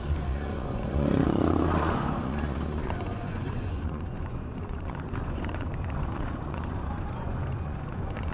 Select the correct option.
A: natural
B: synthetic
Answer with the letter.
B